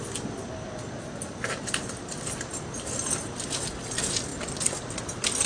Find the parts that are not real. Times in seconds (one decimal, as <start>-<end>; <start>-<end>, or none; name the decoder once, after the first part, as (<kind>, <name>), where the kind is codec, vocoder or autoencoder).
none